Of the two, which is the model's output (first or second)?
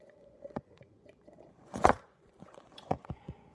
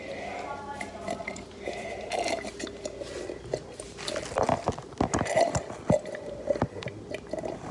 first